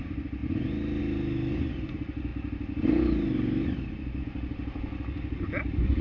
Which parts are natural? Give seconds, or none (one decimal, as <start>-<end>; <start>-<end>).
0.0-6.0